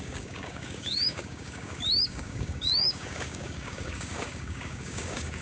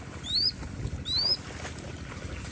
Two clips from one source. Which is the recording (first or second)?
second